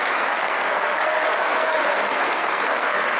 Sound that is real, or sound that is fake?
fake